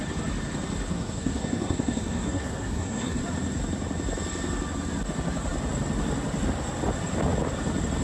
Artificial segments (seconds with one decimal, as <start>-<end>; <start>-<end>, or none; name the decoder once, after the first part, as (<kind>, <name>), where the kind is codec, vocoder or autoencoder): 0.9-3.2 (codec, SNAC)